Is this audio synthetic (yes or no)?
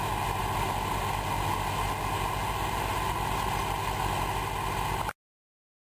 no